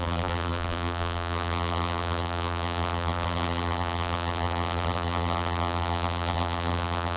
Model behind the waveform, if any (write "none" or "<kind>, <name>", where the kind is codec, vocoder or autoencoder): vocoder, BigVGAN v2